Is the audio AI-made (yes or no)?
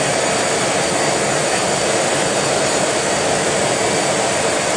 no